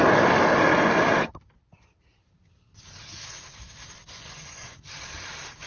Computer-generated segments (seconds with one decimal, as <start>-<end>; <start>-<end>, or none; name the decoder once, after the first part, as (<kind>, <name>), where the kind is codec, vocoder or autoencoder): 4.0-4.8 (vocoder, Vocos)